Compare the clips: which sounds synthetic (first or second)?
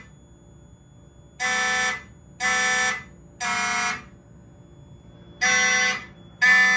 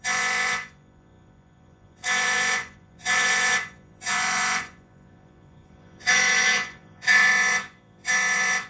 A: second